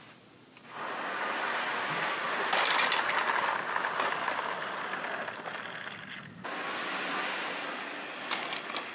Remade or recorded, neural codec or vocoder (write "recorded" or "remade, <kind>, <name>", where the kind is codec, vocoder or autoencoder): recorded